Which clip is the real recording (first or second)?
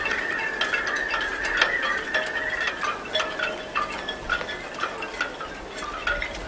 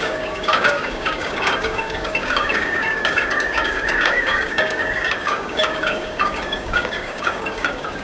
first